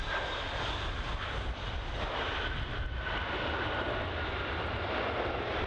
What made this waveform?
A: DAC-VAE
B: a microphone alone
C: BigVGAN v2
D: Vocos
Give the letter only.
B